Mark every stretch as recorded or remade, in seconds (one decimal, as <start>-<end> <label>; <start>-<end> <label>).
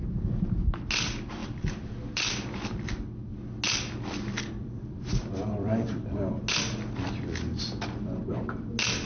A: 0.0-1.4 recorded; 1.4-2.9 remade; 2.9-4.6 recorded; 4.6-6.3 remade; 6.3-9.1 recorded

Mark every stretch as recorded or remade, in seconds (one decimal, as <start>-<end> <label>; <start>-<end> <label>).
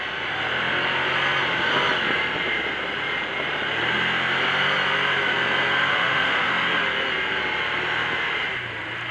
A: 0.0-5.9 recorded; 5.9-6.5 remade; 6.5-9.1 recorded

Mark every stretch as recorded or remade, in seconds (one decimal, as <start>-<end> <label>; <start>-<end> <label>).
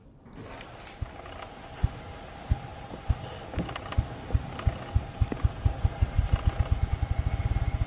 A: 0.0-2.0 remade; 2.0-7.9 recorded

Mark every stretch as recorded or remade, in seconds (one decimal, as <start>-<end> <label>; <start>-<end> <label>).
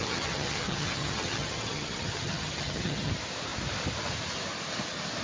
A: 0.0-3.1 remade; 3.1-5.2 recorded